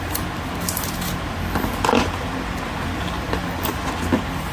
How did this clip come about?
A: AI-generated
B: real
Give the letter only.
B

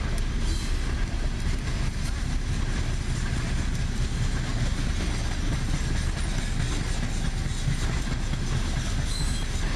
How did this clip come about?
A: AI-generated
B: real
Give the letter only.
B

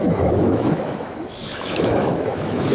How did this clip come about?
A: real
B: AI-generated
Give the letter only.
B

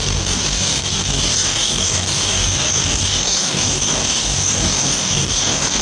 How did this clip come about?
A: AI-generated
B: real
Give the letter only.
A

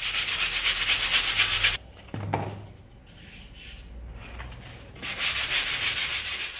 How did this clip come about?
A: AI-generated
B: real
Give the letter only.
B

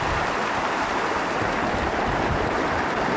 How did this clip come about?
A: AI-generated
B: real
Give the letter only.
B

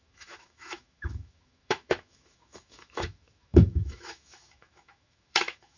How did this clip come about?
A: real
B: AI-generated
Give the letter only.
B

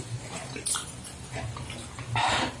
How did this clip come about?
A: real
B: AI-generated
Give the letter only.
A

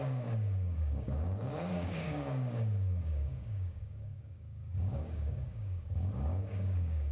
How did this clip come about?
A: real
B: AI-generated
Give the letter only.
B